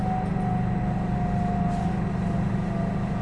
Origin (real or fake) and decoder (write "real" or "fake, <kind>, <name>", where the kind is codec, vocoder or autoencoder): real